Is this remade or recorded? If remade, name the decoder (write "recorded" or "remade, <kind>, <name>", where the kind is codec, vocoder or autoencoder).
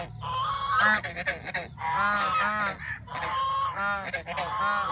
recorded